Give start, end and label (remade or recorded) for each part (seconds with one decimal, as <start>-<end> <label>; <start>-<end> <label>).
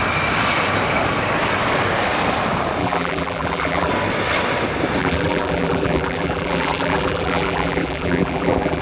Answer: 0.0-2.8 recorded; 2.8-3.9 remade; 3.9-5.0 recorded; 5.0-8.8 remade